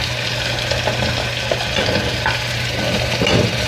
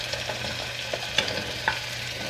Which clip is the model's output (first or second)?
first